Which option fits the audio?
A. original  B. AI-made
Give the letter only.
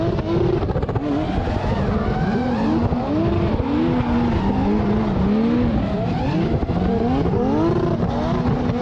A